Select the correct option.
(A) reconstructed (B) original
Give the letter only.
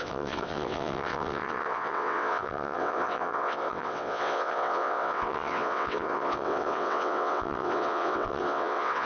A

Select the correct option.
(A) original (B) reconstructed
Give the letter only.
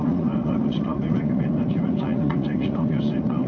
B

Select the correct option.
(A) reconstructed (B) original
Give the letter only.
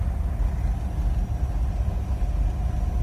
B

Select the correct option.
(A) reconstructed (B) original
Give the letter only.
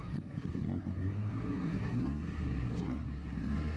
A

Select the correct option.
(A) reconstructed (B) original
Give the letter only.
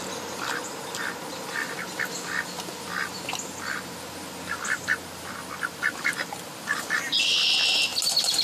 B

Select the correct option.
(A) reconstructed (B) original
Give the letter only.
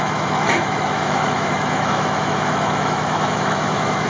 A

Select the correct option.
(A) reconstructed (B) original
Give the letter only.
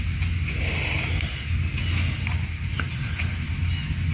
B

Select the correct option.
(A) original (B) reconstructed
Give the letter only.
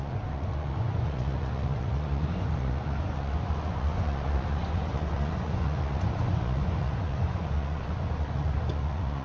B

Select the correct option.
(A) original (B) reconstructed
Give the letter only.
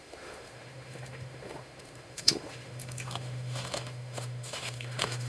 B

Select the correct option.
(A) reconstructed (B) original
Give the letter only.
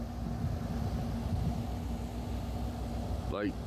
B